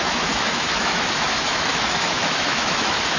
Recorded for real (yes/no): no